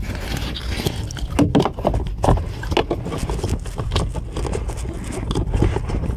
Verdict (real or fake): real